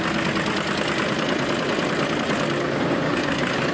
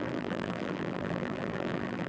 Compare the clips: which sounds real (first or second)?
first